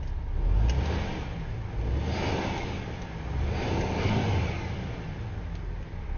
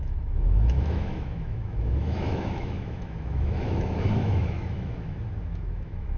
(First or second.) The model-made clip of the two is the second